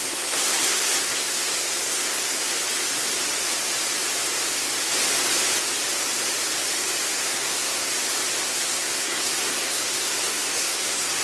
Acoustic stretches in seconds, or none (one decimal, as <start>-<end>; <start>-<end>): 2.6-7.1; 7.9-8.4